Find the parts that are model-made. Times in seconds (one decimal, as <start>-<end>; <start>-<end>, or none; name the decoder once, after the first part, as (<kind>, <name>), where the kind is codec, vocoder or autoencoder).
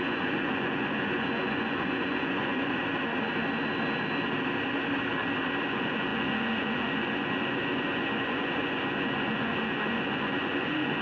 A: 0.0-2.8 (vocoder, Vocos); 5.6-11.0